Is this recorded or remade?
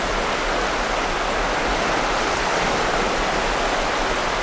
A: recorded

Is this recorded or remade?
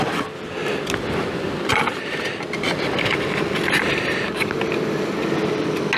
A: recorded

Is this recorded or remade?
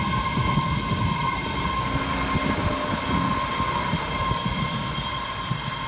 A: recorded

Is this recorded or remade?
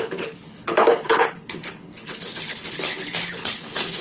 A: remade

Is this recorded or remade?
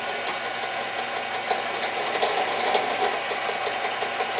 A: recorded